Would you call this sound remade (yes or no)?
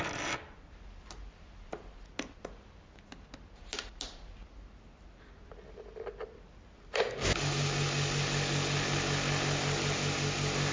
no